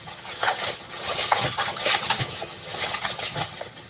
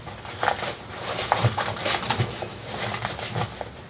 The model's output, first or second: first